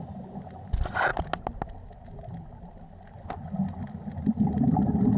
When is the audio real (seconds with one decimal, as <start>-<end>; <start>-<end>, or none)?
0.0-5.2

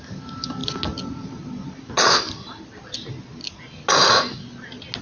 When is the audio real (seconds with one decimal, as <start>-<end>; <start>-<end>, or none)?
0.0-5.0

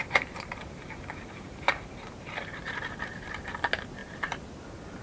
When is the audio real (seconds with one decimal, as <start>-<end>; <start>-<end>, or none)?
3.0-4.0; 4.5-5.0

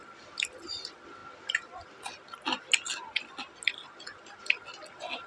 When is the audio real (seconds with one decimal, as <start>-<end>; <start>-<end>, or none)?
0.0-5.3

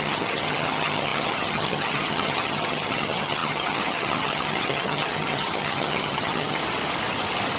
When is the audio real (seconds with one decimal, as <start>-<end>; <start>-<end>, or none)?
6.6-7.6

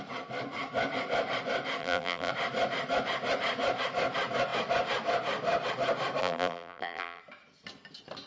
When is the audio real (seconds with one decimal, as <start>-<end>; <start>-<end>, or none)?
0.0-1.8; 2.3-6.2; 7.2-8.3

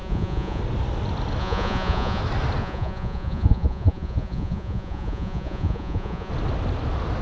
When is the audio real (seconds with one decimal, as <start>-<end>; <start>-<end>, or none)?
0.6-1.4; 2.2-2.6; 6.3-7.2